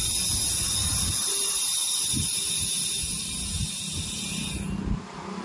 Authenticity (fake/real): real